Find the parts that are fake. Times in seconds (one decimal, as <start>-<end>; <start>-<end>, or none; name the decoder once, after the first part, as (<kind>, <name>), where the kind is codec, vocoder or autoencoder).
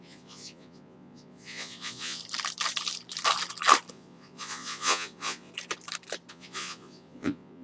0.0-2.2 (vocoder, Vocos); 3.9-5.5; 6.3-7.6